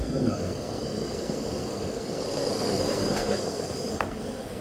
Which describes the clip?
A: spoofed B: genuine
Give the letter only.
A